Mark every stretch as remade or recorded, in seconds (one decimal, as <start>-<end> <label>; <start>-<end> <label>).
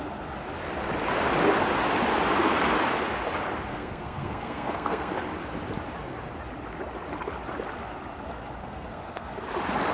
0.0-3.7 recorded; 3.7-5.1 remade; 5.1-8.6 recorded; 8.6-9.3 remade; 9.3-9.9 recorded